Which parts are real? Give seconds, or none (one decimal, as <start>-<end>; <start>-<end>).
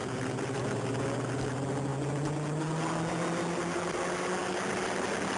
0.0-5.4